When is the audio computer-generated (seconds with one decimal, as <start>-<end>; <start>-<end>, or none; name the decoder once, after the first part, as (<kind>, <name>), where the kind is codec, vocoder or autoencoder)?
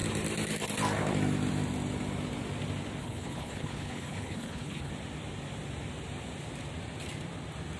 3.0-4.9 (codec, HILCodec)